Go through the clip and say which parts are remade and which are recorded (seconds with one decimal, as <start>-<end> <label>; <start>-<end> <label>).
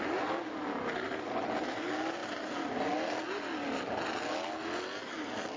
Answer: 0.0-5.6 recorded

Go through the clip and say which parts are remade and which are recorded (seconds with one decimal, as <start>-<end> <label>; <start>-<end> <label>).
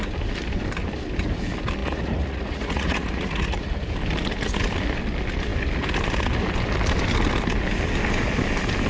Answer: 0.0-1.8 recorded; 1.8-3.7 remade; 3.7-8.9 recorded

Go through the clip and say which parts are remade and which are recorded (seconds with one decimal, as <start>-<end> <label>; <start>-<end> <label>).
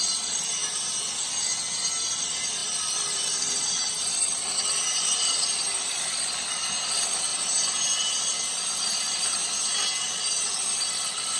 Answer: 0.0-0.6 remade; 0.6-2.2 recorded; 2.2-7.3 remade; 7.3-8.8 recorded; 8.8-9.4 remade; 9.4-10.7 recorded; 10.7-11.4 remade